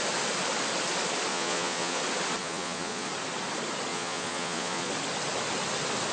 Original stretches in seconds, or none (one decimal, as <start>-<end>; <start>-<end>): 0.0-1.3; 2.0-2.4; 3.1-3.9; 4.9-6.1